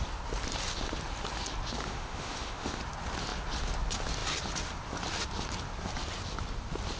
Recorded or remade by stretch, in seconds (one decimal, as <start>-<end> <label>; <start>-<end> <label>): 0.0-1.8 recorded; 1.8-2.8 remade; 2.8-7.0 recorded